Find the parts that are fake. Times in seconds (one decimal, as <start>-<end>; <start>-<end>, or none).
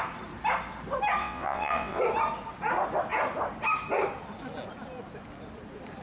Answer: 1.2-2.0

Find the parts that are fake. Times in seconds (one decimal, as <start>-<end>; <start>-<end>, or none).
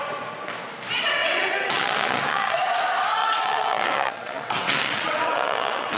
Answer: 1.2-2.6; 3.2-6.0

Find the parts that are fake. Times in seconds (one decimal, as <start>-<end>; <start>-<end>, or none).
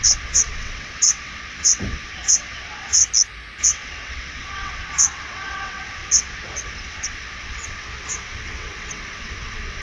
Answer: 0.0-3.0; 3.6-9.8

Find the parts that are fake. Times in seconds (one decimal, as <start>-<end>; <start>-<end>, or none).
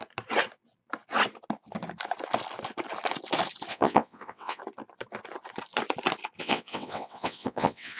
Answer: 3.7-4.6; 6.4-8.0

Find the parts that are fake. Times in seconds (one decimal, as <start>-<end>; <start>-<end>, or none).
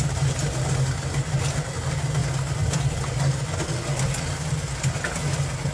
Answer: none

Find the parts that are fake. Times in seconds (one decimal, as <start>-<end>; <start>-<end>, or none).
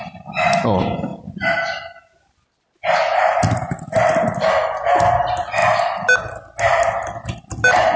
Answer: none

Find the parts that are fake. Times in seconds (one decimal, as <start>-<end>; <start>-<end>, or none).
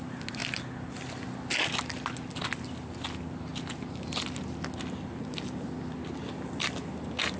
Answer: none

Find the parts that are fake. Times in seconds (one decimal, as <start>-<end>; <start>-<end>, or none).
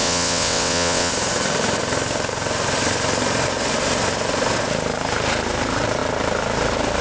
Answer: 0.0-1.1